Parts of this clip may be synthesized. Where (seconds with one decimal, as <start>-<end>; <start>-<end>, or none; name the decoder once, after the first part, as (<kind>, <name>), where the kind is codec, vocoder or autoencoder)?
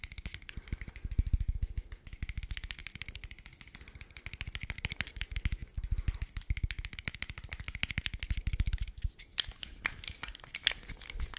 none